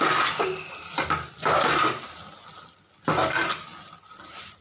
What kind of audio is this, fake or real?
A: real